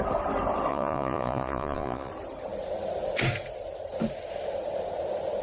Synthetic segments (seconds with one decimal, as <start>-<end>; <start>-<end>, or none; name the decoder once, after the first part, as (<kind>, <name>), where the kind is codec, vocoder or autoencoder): 0.7-2.1 (vocoder, Vocos)